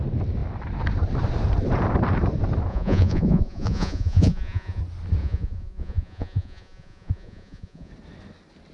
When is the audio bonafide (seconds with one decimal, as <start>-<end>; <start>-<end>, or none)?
0.0-2.7; 4.8-5.2; 7.9-8.7